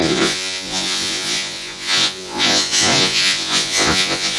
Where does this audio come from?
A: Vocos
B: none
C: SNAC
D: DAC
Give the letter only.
A